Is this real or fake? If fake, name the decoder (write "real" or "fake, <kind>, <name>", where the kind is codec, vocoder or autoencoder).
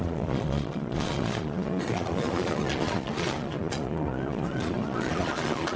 fake, vocoder, Vocos